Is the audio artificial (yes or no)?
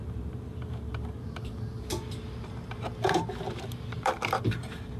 yes